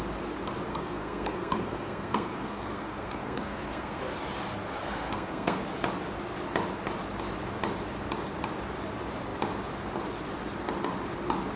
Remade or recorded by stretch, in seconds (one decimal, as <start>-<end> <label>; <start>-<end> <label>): 0.0-0.7 recorded; 0.7-4.0 remade; 4.0-4.8 recorded; 4.8-5.6 remade; 5.6-11.6 recorded